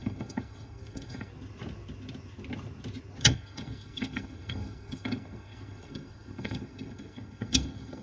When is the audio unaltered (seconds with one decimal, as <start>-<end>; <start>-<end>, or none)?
1.3-3.2